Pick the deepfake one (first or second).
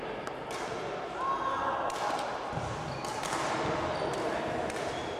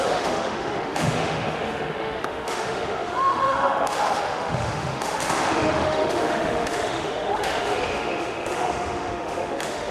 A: second